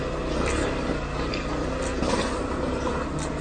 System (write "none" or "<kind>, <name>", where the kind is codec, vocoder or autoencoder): none